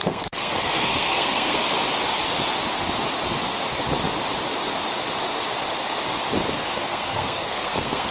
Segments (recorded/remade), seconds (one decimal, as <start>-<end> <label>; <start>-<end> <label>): 0.0-1.6 remade; 1.6-6.5 recorded; 6.5-8.1 remade